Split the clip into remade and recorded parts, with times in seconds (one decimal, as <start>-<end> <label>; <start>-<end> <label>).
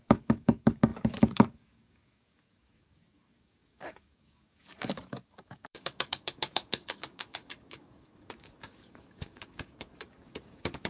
0.0-10.9 remade